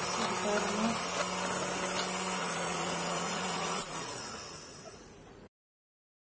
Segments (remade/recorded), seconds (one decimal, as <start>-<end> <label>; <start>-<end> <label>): 0.0-2.4 recorded; 2.4-6.3 remade